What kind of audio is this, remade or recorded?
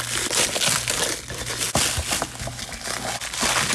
recorded